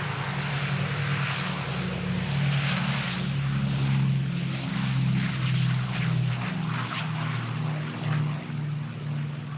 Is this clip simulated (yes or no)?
no